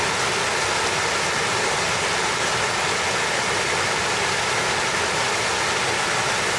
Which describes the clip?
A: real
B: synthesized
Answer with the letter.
A